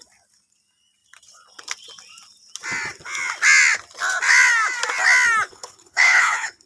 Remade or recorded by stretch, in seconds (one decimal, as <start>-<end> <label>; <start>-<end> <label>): 0.0-5.5 recorded; 5.5-6.7 remade